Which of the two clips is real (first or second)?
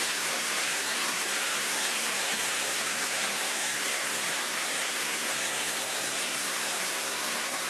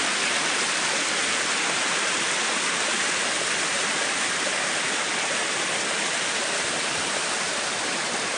second